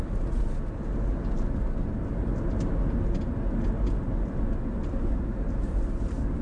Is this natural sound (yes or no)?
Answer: yes